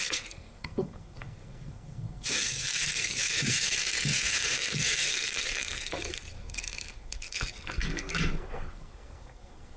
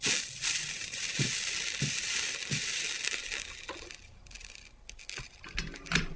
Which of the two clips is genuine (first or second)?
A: second